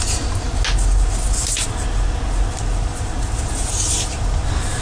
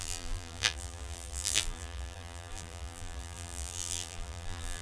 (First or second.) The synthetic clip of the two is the second